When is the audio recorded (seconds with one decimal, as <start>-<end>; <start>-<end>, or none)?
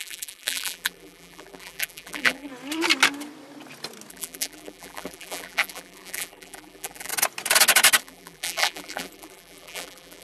2.5-4.1; 7.1-8.0